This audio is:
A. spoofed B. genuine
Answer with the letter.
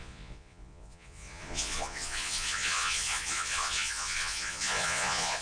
A